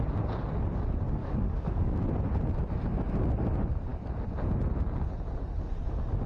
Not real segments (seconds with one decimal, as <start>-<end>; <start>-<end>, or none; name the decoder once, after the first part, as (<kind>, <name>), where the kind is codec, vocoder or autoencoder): 1.2-2.0 (codec, DAC)